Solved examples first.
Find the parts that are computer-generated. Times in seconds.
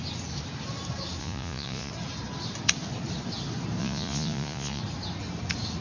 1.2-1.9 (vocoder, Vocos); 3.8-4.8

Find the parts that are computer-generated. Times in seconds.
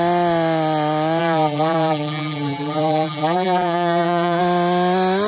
1.2-4.4 (vocoder, BigVGAN v2)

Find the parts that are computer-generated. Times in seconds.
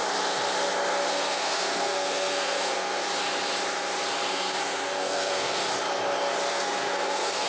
1.1-3.0 (codec, SNAC); 4.3-5.6; 6.5-7.5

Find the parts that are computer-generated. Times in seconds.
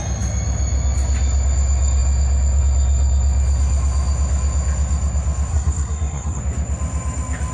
5.5-6.4 (codec, SNAC)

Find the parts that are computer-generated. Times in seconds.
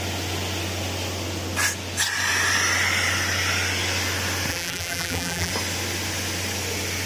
4.5-5.5 (vocoder, BigVGAN v2)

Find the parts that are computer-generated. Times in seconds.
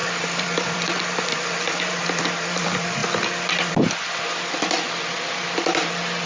0.0-3.0 (vocoder, BigVGAN v2); 3.7-6.3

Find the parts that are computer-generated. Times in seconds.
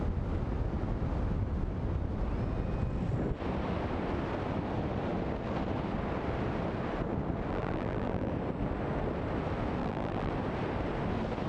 7.5-8.3 (vocoder, BigVGAN v2); 9.8-10.3